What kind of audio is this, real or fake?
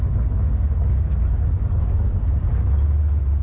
real